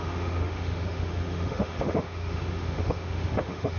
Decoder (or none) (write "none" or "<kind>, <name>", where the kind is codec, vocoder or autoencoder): autoencoder, DAC-VAE